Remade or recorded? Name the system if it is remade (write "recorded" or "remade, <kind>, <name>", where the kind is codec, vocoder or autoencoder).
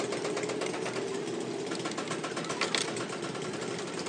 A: recorded